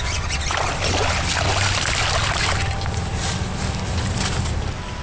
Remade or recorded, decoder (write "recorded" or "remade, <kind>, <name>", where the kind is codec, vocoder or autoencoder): recorded